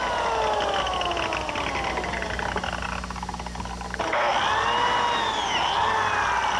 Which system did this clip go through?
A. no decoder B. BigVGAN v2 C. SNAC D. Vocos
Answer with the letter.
A